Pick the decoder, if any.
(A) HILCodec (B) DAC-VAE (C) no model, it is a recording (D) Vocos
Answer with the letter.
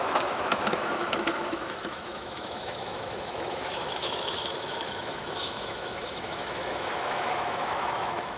B